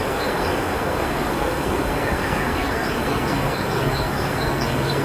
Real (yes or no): no